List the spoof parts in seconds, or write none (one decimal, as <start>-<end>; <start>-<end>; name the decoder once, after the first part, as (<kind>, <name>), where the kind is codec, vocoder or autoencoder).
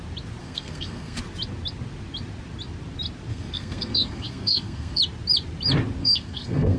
0.4-1.2 (codec, SNAC); 3.3-5.0; 6.0-6.8